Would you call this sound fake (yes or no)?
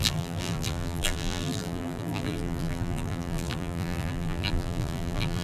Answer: yes